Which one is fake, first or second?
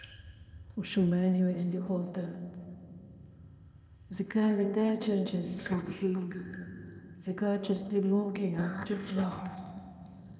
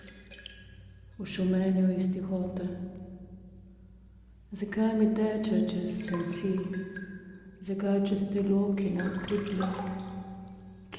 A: first